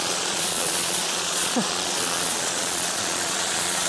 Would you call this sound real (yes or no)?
no